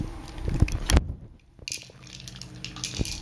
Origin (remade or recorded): recorded